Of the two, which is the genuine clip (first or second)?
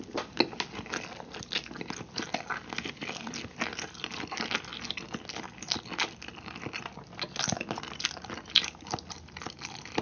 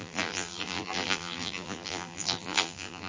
first